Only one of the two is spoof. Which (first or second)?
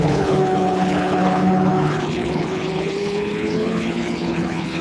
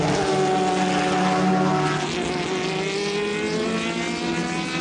first